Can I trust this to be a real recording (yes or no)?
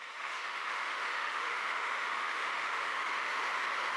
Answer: no